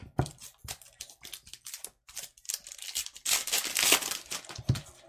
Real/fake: real